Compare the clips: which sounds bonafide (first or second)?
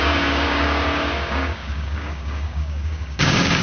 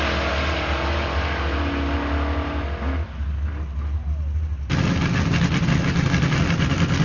second